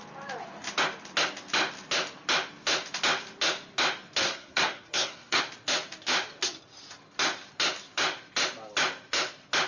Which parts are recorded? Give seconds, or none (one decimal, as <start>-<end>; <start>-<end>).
0.0-4.2; 5.4-9.7